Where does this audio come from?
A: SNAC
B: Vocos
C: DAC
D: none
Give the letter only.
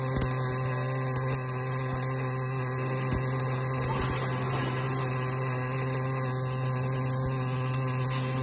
D